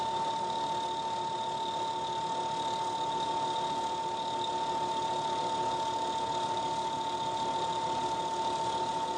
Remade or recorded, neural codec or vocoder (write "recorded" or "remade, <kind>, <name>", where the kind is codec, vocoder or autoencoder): recorded